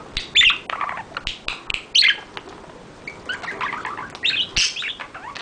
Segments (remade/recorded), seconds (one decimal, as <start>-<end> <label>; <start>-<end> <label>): 0.0-5.4 recorded